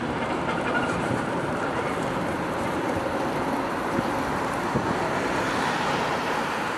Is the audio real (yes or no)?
no